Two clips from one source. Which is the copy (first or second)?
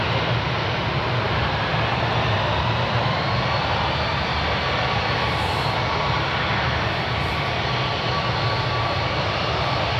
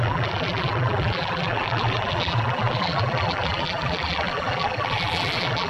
second